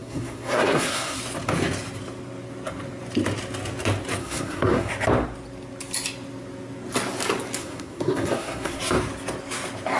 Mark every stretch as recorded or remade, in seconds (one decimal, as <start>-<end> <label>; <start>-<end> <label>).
0.0-1.2 remade; 1.2-4.2 recorded; 4.2-4.9 remade; 4.9-7.6 recorded; 7.6-8.8 remade; 8.8-10.0 recorded